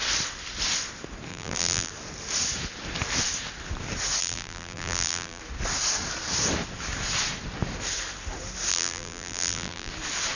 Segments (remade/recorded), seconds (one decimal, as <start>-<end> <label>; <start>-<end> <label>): 0.0-1.3 recorded; 1.3-1.9 remade; 1.9-4.2 recorded; 4.2-5.4 remade; 5.4-8.7 recorded; 8.7-9.9 remade; 9.9-10.4 recorded

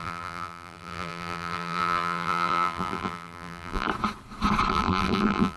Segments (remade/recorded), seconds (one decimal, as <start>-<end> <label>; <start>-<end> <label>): 0.0-3.9 remade; 3.9-4.7 recorded; 4.7-5.6 remade

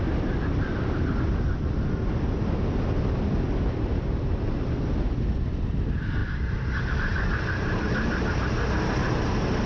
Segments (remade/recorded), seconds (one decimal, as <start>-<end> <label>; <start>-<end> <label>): 0.0-9.7 recorded

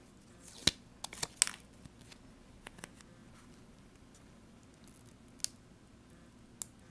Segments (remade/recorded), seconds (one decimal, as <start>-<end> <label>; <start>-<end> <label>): 0.0-3.2 recorded; 3.2-4.6 remade; 4.6-6.9 recorded

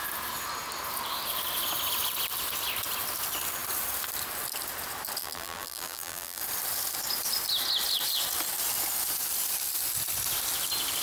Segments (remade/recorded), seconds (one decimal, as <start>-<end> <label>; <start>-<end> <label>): 0.0-5.2 recorded; 5.2-6.4 remade; 6.4-11.0 recorded

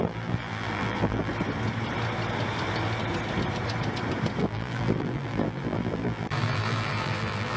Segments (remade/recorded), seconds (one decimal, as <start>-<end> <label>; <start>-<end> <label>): 0.0-1.3 remade; 1.3-4.4 recorded; 4.4-7.6 remade

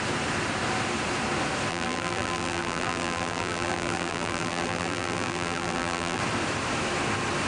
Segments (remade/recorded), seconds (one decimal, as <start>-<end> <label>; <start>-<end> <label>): 0.0-1.7 recorded; 1.7-6.2 remade; 6.2-7.5 recorded